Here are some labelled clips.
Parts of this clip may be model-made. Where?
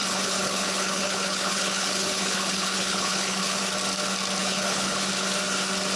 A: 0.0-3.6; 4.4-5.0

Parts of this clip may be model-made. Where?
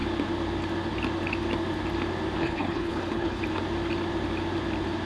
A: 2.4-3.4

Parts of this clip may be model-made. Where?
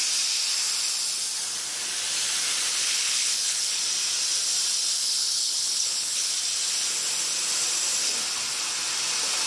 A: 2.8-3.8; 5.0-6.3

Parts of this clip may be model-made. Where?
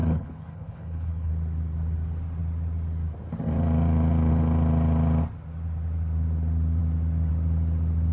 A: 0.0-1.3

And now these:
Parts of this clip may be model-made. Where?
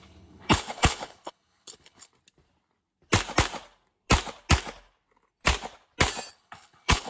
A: 0.0-2.1; 6.3-7.1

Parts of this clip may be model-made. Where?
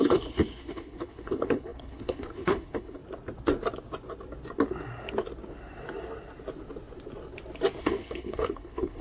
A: 0.0-3.0; 7.8-9.0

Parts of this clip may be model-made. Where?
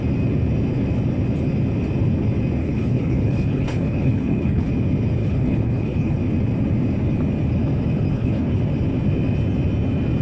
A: 2.6-4.7; 5.2-6.2; 8.1-8.6